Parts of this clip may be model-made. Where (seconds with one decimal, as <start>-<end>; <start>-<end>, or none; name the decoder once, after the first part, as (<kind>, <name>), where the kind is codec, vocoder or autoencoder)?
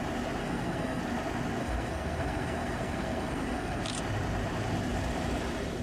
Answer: 0.4-1.0 (codec, SNAC); 1.6-3.8